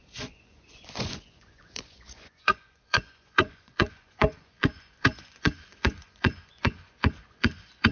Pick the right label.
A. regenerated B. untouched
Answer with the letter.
A